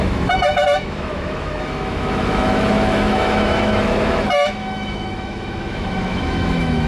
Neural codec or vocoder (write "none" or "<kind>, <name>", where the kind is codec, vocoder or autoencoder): autoencoder, DAC-VAE